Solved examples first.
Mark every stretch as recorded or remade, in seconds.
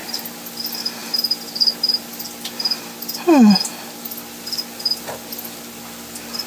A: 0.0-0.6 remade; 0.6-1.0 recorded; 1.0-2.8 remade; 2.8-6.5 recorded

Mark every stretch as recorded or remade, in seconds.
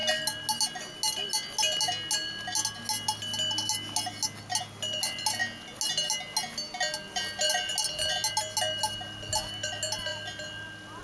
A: 0.0-11.0 recorded